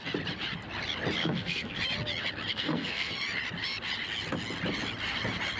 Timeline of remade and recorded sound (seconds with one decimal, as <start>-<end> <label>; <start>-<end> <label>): 0.0-1.2 recorded; 1.2-1.8 remade; 1.8-2.5 recorded; 2.5-3.1 remade; 3.1-5.6 recorded